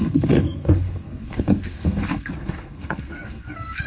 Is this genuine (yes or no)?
no